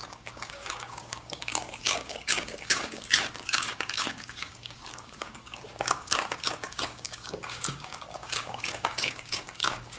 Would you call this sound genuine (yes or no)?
no